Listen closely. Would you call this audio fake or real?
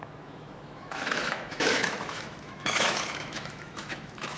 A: fake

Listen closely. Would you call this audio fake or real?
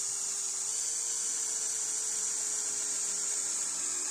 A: real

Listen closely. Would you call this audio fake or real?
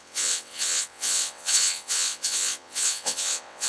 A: fake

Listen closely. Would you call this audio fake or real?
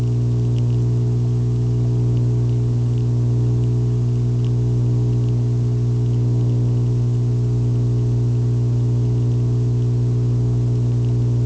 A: real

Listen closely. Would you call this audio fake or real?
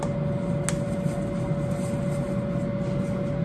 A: real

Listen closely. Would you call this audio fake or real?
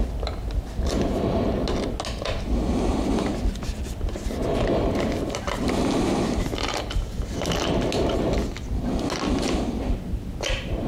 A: real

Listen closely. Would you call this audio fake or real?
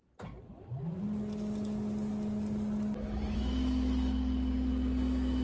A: real